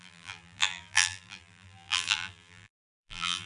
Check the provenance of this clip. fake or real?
fake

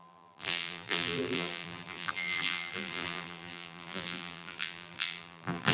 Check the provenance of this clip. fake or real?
fake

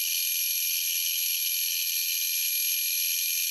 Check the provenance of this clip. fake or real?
real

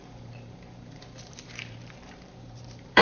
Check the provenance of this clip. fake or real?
fake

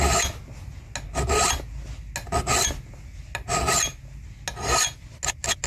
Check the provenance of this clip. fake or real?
real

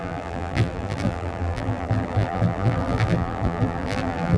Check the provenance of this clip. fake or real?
fake